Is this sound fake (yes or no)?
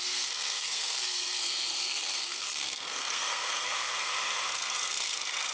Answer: yes